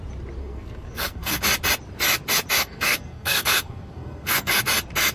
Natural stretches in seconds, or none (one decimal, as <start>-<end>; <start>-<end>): 0.0-0.4; 1.4-2.6; 4.6-5.1